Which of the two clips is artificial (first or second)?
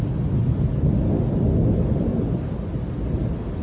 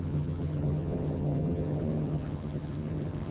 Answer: second